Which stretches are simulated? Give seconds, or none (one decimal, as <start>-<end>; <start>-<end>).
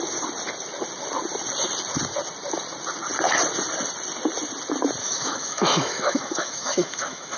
5.0-7.4